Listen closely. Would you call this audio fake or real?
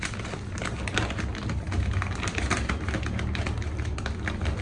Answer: real